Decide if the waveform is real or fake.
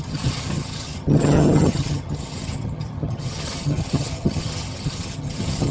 fake